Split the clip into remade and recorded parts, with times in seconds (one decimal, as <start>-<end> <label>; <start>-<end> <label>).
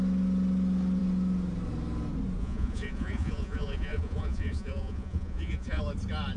0.0-2.4 recorded; 2.4-5.8 remade; 5.8-6.4 recorded